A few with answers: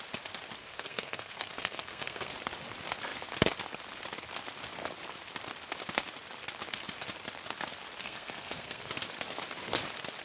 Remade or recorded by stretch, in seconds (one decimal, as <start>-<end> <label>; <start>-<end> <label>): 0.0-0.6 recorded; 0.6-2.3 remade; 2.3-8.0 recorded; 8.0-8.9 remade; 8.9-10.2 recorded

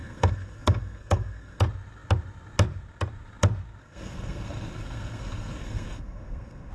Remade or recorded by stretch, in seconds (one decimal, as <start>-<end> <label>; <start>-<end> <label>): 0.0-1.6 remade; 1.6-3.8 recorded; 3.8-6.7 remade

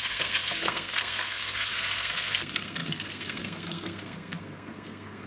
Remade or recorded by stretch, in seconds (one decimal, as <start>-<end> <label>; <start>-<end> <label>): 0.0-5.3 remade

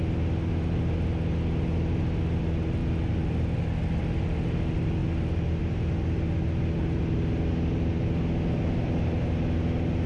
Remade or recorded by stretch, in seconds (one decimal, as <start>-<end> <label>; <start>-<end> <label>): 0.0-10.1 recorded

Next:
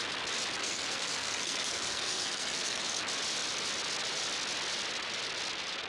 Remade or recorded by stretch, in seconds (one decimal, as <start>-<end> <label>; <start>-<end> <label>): 0.0-0.6 recorded; 0.6-3.0 remade; 3.0-5.9 recorded

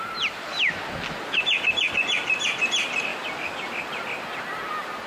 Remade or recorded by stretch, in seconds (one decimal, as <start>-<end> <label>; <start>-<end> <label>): 0.0-5.1 recorded